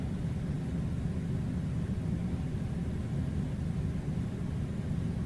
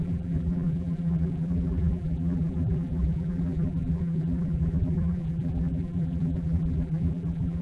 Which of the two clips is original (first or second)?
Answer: first